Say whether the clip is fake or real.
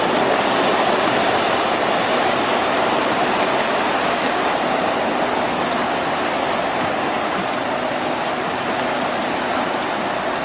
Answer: real